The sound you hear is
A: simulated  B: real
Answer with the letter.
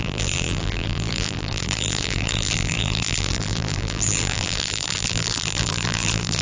A